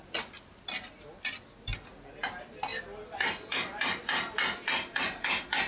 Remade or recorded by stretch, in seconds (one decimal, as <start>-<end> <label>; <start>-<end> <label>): 0.0-5.7 recorded